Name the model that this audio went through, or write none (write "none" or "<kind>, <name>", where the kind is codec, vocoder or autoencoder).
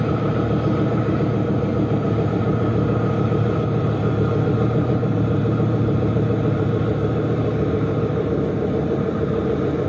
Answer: vocoder, BigVGAN v2